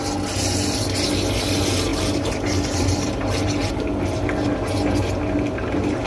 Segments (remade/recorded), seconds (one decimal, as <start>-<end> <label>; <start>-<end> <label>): 0.0-1.9 recorded; 1.9-3.7 remade; 3.7-6.1 recorded